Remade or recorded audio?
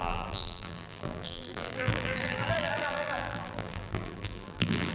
remade